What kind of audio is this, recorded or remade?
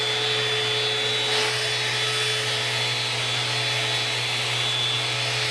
recorded